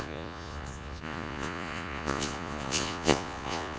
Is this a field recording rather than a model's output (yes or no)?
no